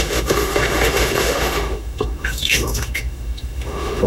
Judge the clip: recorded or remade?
remade